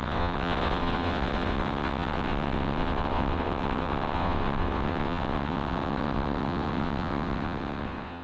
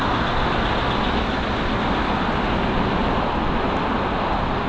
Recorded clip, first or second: second